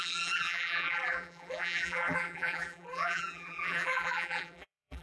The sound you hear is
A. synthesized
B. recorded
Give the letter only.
A